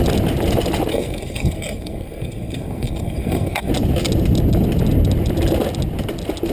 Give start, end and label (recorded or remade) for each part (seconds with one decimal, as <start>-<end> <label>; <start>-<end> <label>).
0.0-0.9 recorded; 0.9-3.7 remade; 3.7-6.5 recorded